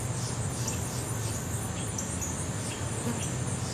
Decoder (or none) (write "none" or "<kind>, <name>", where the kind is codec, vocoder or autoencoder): vocoder, BigVGAN v2